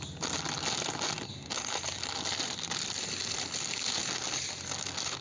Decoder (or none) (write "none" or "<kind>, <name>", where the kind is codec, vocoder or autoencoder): none